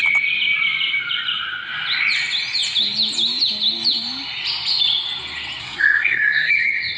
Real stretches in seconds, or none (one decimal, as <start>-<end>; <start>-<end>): 0.0-5.6; 6.5-7.0